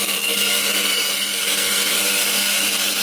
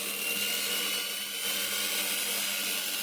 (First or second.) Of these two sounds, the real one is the second